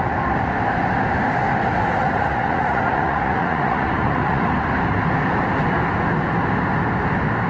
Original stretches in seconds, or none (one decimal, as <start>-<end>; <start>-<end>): 0.0-2.0; 4.5-7.5

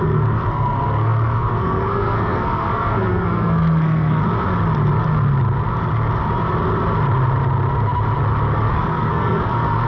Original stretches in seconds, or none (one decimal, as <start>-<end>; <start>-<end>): 4.2-8.7

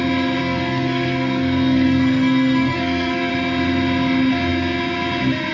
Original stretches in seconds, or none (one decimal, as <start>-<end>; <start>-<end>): 0.0-0.4; 3.3-5.5

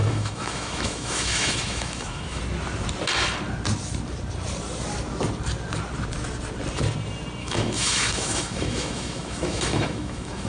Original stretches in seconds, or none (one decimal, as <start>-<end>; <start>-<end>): 2.4-7.4

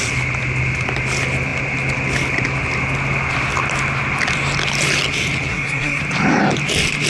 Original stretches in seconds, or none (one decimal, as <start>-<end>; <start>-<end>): 0.0-5.5; 6.0-7.1

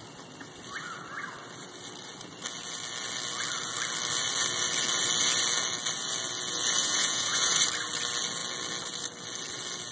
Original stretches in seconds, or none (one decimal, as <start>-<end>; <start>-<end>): 0.0-6.8; 7.6-9.9

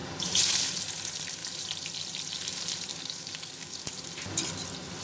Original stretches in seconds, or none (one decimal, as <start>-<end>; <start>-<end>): 0.0-2.9; 3.8-5.0

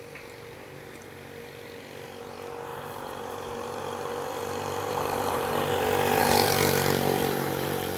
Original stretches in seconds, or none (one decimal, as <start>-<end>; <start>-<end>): 0.0-2.7; 5.8-6.2